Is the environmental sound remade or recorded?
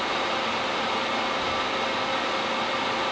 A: recorded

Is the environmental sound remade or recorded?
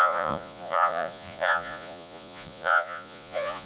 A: remade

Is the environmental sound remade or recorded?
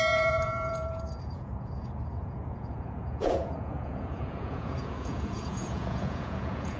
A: remade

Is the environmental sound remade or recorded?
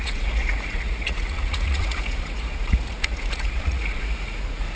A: remade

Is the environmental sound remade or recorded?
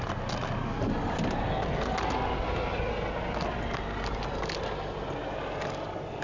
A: recorded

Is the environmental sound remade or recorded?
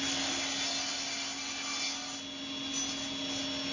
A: recorded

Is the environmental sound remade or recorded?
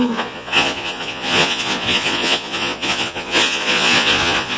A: remade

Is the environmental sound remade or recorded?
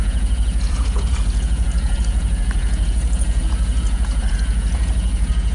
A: remade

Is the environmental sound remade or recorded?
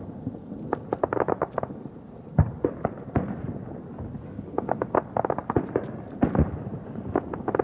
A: recorded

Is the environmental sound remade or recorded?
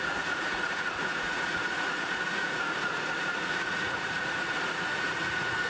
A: remade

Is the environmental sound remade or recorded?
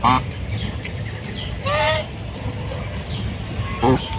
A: recorded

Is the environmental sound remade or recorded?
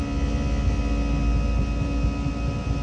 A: recorded